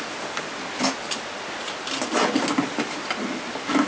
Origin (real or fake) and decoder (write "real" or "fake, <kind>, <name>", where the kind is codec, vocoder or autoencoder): real